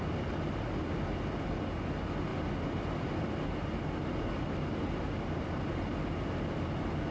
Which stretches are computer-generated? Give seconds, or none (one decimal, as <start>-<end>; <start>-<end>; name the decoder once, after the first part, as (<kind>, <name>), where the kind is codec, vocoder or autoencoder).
none